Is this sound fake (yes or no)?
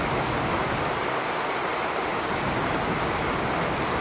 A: no